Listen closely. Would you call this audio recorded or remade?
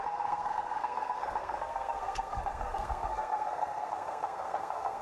remade